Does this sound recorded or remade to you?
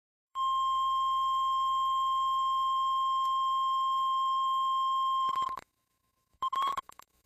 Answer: remade